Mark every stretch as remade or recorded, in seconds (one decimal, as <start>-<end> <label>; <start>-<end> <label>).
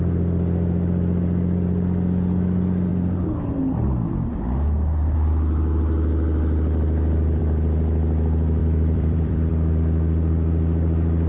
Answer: 0.0-8.6 recorded; 8.6-9.5 remade; 9.5-11.3 recorded